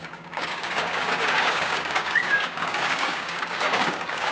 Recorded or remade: remade